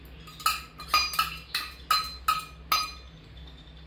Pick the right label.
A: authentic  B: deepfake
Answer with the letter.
A